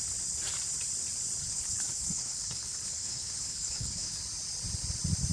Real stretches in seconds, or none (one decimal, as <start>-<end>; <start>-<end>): 0.0-1.4; 4.2-5.3